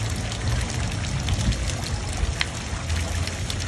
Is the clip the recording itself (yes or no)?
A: yes